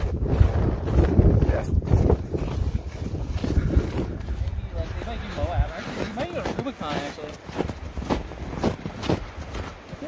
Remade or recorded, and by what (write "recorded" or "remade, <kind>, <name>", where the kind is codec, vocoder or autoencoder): recorded